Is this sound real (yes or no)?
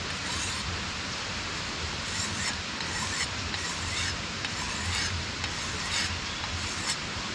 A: yes